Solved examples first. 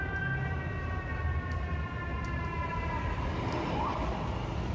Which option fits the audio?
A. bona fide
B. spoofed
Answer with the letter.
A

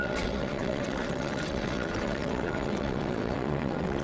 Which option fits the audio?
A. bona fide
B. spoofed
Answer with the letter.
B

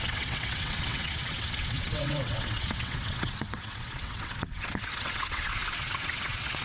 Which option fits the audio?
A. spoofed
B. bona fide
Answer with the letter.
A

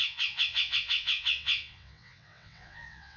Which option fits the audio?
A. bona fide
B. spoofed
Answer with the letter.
B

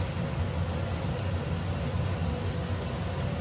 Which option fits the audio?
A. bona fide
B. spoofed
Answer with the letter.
A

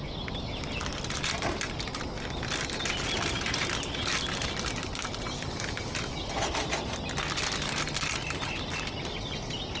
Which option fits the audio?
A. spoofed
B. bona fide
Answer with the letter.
B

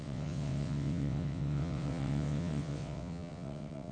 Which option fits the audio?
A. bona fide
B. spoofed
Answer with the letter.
B